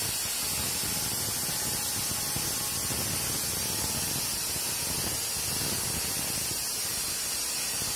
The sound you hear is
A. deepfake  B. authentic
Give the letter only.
B